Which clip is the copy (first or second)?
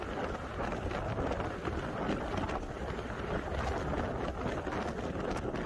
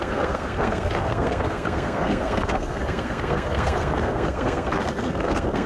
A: second